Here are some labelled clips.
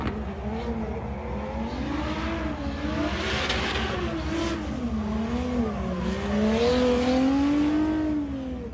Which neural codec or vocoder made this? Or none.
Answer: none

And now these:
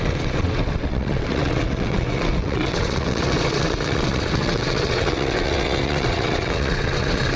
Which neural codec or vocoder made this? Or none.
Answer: vocoder, WaveNeXt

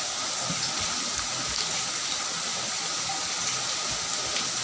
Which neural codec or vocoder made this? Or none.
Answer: none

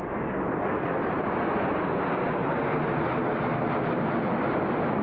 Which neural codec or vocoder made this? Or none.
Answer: none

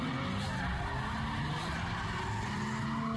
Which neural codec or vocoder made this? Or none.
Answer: none